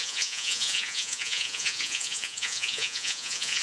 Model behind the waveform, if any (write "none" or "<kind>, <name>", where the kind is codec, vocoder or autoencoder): vocoder, Vocos